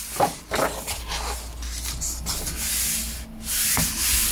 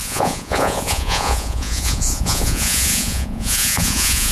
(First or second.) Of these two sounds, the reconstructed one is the second